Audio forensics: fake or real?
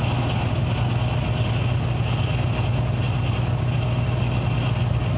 real